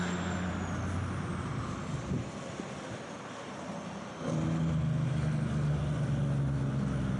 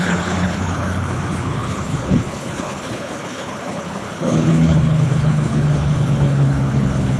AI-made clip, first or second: second